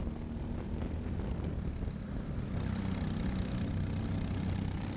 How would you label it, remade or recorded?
recorded